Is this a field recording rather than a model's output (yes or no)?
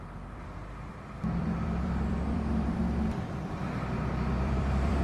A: no